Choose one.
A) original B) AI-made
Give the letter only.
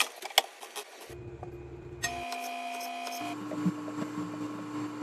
A